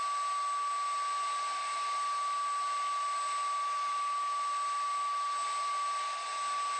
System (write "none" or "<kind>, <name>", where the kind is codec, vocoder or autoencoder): none